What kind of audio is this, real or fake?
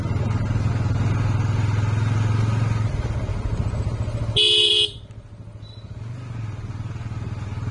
real